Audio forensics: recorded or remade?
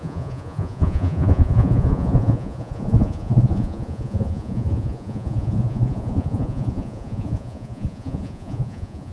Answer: remade